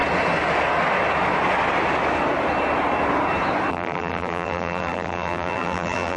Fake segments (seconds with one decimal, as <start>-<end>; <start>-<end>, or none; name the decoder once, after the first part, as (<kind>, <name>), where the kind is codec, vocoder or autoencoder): 3.7-6.2 (vocoder, BigVGAN v2)